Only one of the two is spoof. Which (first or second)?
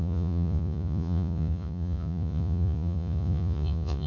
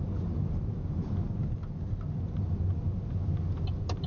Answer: first